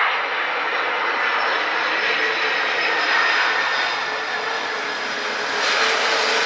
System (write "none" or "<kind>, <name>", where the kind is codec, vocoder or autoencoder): none